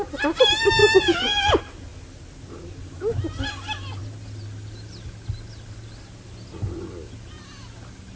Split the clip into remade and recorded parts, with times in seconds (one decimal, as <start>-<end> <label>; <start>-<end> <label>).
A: 0.0-0.8 recorded; 0.8-1.5 remade; 1.5-8.2 recorded